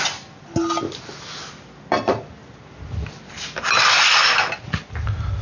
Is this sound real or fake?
real